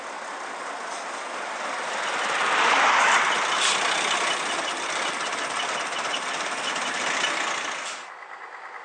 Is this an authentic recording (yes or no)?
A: yes